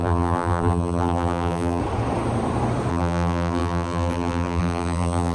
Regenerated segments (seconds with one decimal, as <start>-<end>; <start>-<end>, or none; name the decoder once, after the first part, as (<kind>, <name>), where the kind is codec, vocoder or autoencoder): 0.0-1.8 (vocoder, BigVGAN v2); 2.9-5.3